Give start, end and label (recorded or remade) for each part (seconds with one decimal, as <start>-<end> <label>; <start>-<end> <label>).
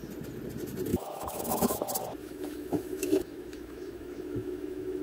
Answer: 0.0-0.9 recorded; 0.9-1.8 remade; 1.8-2.2 recorded; 2.2-5.0 remade